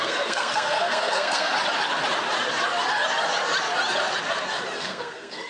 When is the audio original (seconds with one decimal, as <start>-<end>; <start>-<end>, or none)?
1.5-4.8